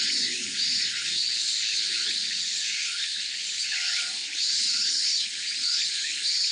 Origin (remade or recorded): remade